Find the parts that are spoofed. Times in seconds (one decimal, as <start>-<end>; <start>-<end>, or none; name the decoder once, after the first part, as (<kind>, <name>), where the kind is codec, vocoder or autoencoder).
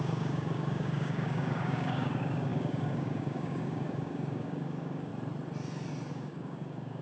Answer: 0.0-5.1 (codec, DAC); 6.1-7.0